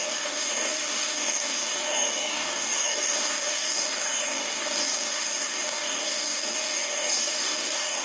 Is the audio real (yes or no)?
no